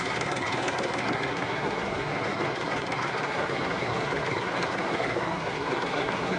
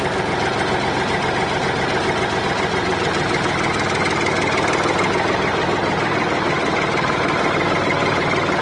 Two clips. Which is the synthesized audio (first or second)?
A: first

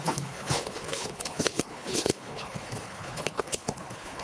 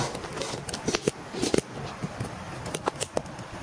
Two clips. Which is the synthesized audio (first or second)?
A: first